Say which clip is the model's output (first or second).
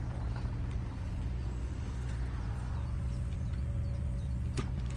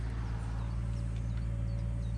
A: first